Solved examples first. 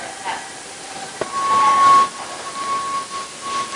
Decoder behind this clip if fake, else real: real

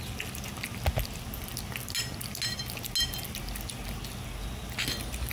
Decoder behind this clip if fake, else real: real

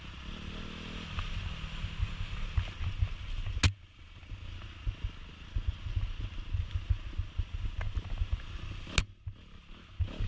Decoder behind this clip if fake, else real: real